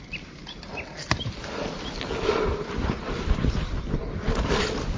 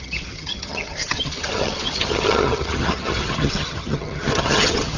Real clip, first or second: first